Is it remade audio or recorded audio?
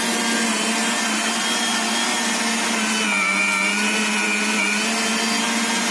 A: recorded